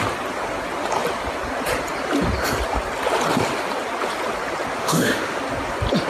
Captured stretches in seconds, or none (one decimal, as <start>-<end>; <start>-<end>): 0.0-4.8; 5.4-6.1